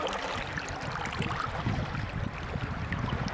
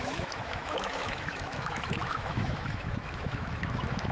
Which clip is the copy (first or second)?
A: second